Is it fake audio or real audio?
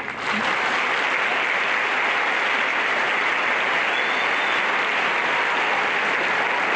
real